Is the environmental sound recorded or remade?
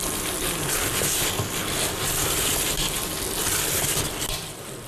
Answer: recorded